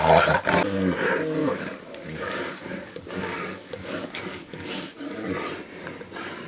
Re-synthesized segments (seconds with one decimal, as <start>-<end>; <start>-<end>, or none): 1.4-5.3